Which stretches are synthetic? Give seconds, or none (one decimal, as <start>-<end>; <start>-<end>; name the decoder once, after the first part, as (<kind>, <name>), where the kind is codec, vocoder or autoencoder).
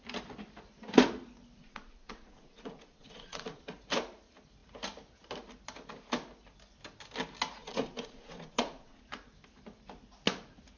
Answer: 1.6-3.6 (vocoder, Vocos); 7.6-9.0